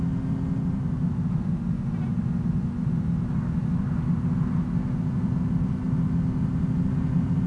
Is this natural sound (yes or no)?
yes